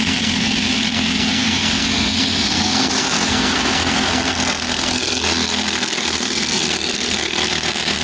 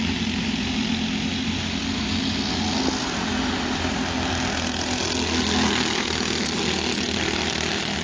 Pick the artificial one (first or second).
first